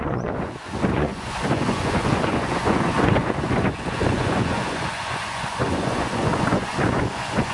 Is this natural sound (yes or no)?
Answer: no